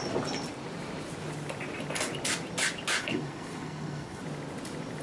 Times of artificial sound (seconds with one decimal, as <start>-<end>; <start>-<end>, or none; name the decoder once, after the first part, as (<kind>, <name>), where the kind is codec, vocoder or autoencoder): 3.0-4.2 (codec, SNAC)